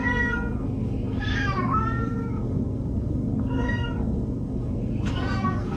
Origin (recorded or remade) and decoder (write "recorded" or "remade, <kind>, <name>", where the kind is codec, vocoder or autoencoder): remade, codec, SNAC